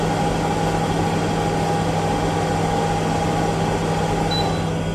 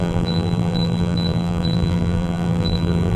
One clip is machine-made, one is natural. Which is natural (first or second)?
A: first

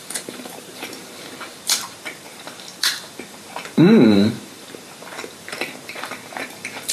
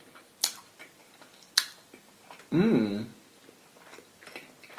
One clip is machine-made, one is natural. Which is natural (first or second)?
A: second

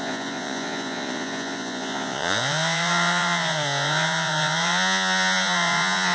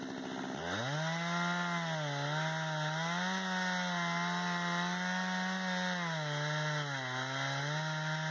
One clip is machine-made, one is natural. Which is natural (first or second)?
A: second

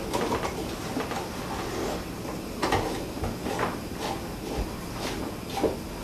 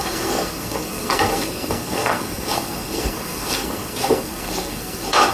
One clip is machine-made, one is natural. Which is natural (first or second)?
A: first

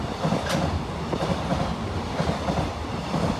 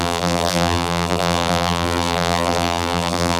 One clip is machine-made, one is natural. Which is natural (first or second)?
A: first